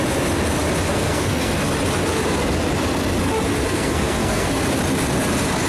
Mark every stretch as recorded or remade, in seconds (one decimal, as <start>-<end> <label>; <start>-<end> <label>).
0.0-0.9 recorded; 0.9-1.5 remade; 1.5-3.6 recorded; 3.6-4.5 remade; 4.5-5.7 recorded